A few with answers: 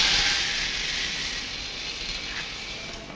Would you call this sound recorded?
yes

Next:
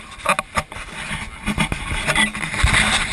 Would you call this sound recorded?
yes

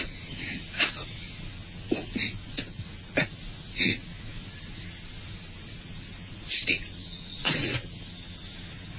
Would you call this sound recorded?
no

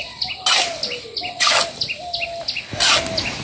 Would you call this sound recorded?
yes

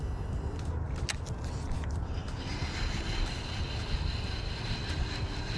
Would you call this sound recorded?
yes